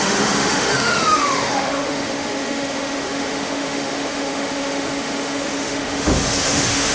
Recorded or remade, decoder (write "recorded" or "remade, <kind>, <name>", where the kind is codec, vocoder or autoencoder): remade, autoencoder, DAC-VAE